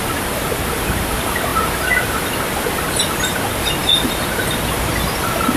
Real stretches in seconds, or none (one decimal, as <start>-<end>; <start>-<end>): 0.0-5.6